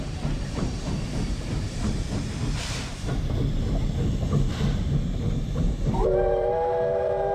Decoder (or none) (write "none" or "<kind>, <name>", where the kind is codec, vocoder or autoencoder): vocoder, BigVGAN v2